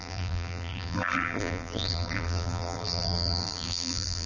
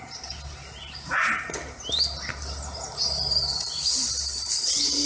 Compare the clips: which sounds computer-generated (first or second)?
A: first